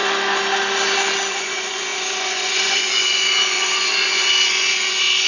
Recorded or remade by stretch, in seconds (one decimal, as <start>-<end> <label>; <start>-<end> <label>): 0.0-1.3 recorded; 1.3-5.3 remade